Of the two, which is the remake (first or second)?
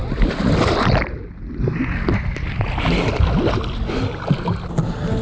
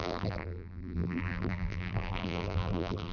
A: second